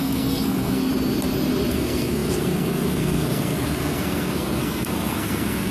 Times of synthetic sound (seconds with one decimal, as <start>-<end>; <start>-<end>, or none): 0.0-0.9; 1.7-5.7